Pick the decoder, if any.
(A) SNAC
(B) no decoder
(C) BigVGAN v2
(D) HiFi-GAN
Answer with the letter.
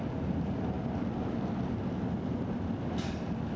B